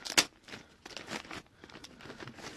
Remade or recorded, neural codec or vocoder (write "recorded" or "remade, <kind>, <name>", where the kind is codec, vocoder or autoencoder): recorded